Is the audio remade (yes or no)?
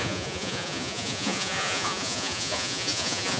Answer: yes